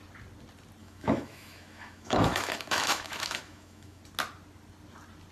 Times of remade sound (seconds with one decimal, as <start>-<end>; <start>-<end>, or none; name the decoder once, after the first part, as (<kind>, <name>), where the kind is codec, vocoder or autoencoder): 0.8-4.0 (autoencoder, DAC-VAE)